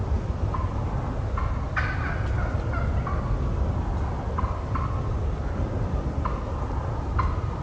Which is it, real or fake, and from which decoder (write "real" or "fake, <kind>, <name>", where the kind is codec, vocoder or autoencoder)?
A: real